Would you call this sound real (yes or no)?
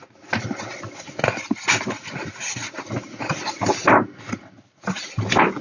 yes